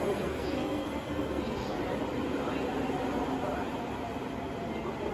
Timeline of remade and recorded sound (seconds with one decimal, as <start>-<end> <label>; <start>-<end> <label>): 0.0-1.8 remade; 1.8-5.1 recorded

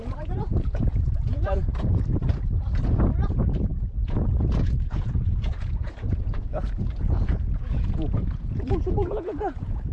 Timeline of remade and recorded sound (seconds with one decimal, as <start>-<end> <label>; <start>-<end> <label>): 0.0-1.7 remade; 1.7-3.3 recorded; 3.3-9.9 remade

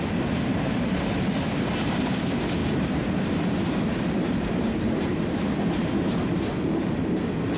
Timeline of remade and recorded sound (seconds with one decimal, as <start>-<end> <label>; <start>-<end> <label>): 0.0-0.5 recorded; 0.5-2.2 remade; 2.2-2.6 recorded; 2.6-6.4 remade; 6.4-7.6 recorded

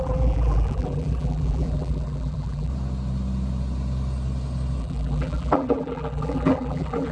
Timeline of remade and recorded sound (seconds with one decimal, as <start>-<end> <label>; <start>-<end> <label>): 0.0-2.7 remade; 2.7-4.8 recorded; 4.8-7.1 remade